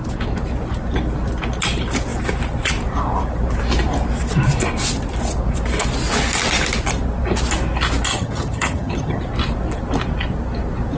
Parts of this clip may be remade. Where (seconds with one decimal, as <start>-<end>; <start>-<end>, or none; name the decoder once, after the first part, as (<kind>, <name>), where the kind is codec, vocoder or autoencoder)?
8.1-9.2 (vocoder, HiFi-GAN)